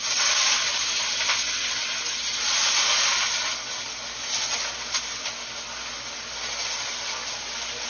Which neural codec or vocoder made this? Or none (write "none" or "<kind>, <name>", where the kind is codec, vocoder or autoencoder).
none